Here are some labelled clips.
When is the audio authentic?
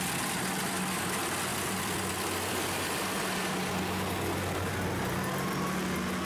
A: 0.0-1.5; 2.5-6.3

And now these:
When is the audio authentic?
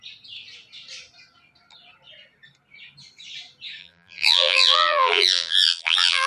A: 0.0-3.8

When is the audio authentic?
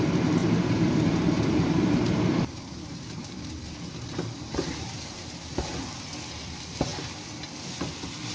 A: 0.0-0.4; 5.0-8.3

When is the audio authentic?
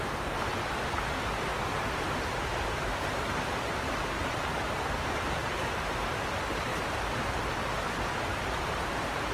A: 1.5-2.5; 6.7-8.6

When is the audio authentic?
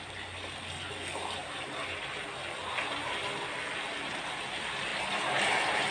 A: 0.0-4.9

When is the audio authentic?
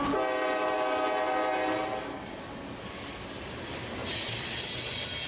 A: 0.0-5.3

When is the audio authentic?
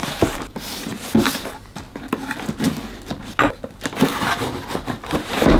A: 0.0-0.5; 0.9-4.3